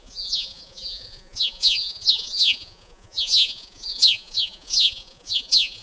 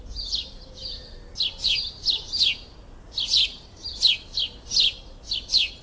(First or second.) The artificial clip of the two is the first